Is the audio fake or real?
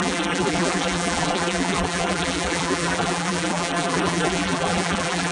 fake